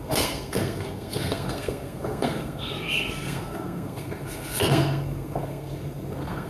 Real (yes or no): no